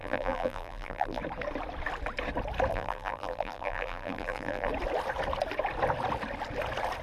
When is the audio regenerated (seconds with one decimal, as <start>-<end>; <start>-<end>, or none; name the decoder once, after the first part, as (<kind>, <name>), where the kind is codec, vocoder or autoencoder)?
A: 0.0-1.2 (vocoder, BigVGAN v2); 2.7-4.7